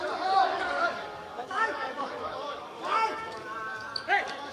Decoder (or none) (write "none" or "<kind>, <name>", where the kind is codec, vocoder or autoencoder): codec, DAC